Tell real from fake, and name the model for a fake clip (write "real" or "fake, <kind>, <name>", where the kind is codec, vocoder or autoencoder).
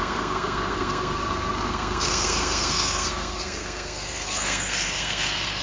fake, codec, SNAC